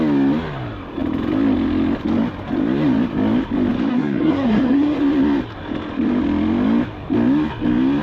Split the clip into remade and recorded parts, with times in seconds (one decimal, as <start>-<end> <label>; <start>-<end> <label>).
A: 0.0-3.9 recorded; 3.9-5.0 remade; 5.0-8.0 recorded